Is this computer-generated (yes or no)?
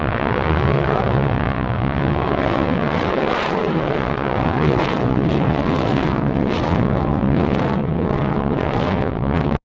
yes